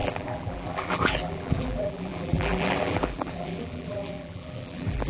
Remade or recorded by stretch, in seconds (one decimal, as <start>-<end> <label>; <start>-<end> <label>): 0.0-5.1 remade